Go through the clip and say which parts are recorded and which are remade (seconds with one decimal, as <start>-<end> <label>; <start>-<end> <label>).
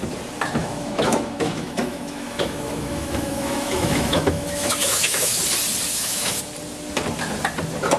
0.0-0.6 recorded; 0.6-5.4 remade; 5.4-5.9 recorded; 5.9-6.4 remade; 6.4-8.0 recorded